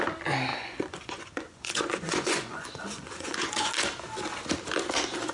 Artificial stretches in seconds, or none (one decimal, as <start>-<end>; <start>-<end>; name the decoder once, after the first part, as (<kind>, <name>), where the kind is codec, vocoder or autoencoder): 0.5-3.7 (vocoder, Vocos)

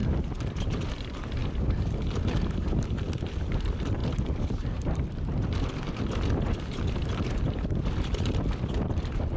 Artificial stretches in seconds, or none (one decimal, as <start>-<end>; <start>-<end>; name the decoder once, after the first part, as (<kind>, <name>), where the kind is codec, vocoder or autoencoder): 0.5-1.4 (vocoder, BigVGAN v2); 3.0-9.4

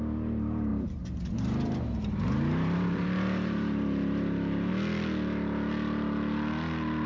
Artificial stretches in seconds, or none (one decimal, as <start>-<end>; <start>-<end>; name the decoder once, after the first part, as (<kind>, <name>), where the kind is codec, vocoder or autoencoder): 0.7-4.7 (vocoder, BigVGAN v2)

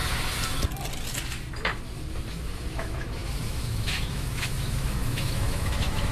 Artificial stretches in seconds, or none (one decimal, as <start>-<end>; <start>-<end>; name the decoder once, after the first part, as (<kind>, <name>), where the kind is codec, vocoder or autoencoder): 2.3-6.1 (autoencoder, DAC-VAE)

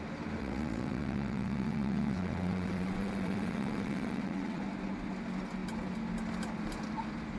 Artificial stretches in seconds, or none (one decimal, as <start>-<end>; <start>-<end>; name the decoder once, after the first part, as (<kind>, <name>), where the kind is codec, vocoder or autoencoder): 0.4-4.6 (vocoder, WaveNeXt)

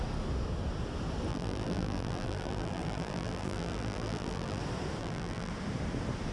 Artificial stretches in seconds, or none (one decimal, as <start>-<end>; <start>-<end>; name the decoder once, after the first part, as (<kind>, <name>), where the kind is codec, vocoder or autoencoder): 1.3-4.6 (vocoder, BigVGAN v2); 5.0-5.5

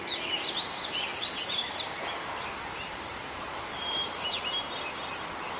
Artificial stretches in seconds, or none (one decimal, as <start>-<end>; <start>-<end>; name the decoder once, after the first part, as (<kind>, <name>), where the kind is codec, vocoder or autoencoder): 1.1-4.5 (vocoder, BigVGAN v2)